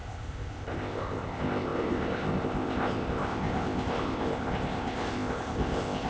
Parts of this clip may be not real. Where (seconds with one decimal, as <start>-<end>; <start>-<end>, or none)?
0.0-6.1